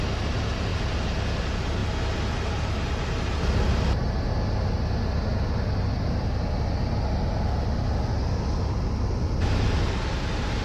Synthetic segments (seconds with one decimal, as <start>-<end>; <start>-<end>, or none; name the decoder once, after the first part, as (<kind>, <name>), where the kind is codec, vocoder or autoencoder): none